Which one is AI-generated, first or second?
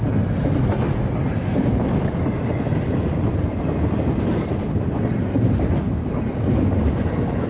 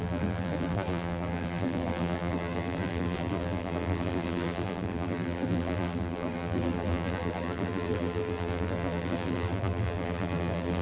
second